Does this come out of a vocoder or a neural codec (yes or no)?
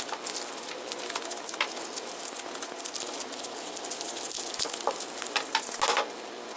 no